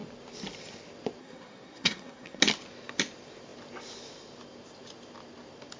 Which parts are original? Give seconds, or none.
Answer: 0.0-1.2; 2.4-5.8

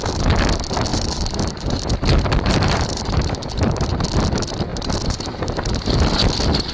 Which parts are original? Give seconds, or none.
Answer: 0.0-0.9; 3.9-4.7; 6.1-6.7

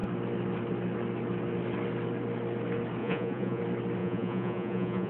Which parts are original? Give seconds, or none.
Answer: 0.0-3.0; 3.6-4.0

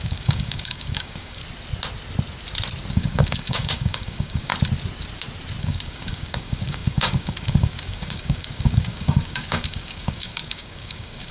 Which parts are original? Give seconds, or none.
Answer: 1.4-2.9; 4.5-5.6

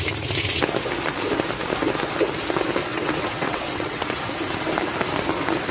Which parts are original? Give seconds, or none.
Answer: 0.0-2.9; 4.2-5.7